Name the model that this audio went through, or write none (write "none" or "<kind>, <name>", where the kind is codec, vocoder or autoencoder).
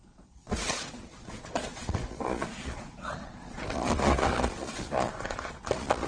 vocoder, Vocos